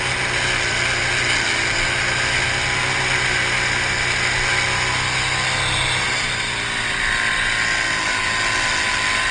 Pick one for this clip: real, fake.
real